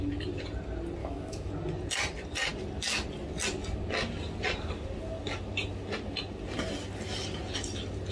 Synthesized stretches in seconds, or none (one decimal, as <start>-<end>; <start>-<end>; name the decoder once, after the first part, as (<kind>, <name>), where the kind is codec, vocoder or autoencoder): 1.0-1.5 (autoencoder, DAC-VAE)

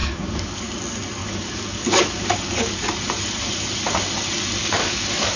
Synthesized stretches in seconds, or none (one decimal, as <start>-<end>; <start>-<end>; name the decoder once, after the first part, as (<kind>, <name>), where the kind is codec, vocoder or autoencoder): 0.0-0.7 (codec, DAC); 1.2-2.8; 4.6-5.4

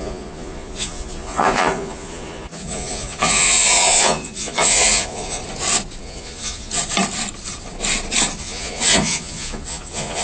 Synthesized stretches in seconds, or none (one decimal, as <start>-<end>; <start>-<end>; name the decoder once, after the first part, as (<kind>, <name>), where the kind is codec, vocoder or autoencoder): 0.0-5.4 (vocoder, Vocos); 6.0-6.8; 8.4-10.2